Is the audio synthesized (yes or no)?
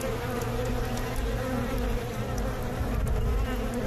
no